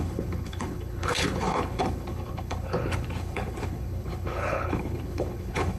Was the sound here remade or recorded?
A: remade